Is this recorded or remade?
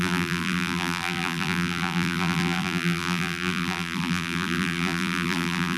remade